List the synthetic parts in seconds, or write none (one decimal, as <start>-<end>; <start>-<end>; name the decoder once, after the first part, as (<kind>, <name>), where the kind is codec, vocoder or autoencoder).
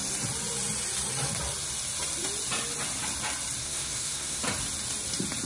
3.6-4.4 (codec, SNAC)